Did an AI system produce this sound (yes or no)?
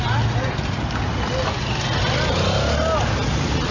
no